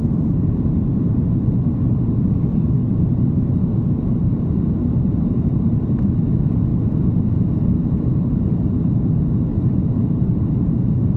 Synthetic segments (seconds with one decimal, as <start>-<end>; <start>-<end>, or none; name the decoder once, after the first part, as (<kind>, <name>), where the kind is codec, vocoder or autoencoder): 0.0-1.3 (vocoder, BigVGAN v2); 2.8-6.1; 9.5-10.7